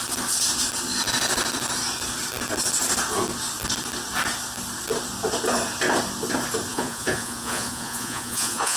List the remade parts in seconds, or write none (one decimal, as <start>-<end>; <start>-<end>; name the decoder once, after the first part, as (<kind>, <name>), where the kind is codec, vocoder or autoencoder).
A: 6.7-8.8 (vocoder, Vocos)